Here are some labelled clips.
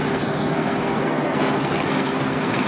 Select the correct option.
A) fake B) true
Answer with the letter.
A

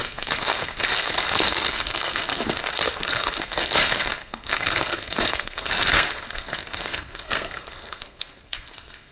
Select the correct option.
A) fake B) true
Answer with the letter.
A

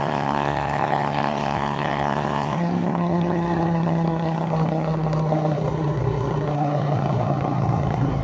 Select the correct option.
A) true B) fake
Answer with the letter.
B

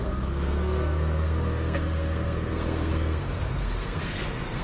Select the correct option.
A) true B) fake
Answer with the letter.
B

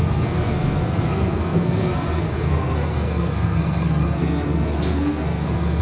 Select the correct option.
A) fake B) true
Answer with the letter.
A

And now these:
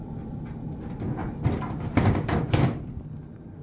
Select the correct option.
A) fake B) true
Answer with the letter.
B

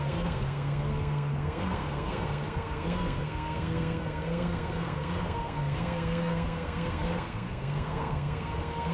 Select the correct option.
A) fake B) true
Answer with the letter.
A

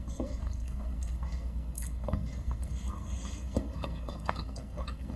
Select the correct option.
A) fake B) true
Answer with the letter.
A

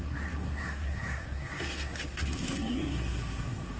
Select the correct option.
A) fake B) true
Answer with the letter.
A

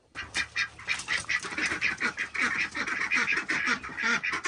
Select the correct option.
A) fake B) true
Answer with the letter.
B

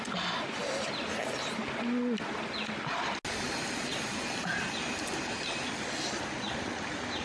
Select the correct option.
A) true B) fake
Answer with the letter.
A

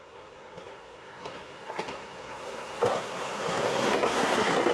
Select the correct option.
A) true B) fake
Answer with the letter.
B